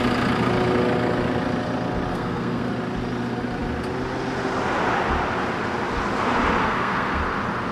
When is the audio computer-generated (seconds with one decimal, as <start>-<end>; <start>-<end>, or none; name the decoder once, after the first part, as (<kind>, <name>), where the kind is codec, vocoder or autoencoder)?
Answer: 2.1-2.7 (codec, SNAC); 6.6-7.2